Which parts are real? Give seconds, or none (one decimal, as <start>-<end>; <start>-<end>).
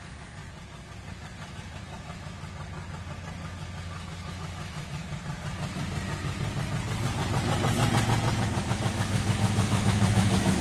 0.4-4.3; 5.0-8.7